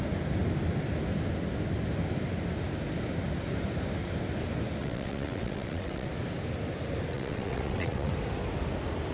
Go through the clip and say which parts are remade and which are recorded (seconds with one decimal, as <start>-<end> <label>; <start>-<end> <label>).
0.0-4.8 recorded; 4.8-6.1 remade; 6.1-7.1 recorded; 7.1-8.1 remade; 8.1-9.1 recorded